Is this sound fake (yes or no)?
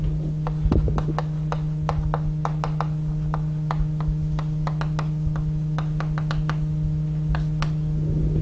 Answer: no